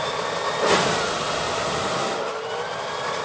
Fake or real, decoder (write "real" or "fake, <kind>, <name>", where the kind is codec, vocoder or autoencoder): real